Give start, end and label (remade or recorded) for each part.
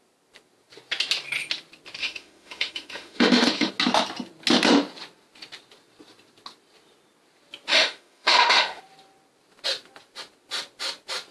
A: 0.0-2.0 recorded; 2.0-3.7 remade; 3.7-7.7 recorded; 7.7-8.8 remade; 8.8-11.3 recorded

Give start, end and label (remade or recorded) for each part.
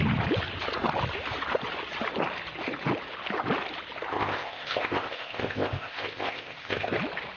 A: 0.0-4.1 recorded; 4.1-6.9 remade; 6.9-7.4 recorded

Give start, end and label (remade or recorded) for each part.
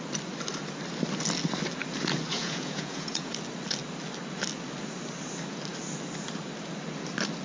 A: 0.0-2.3 recorded; 2.3-3.3 remade; 3.3-7.4 recorded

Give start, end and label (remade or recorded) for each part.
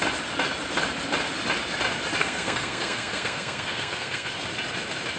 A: 0.0-2.2 recorded; 2.2-4.3 remade; 4.3-5.2 recorded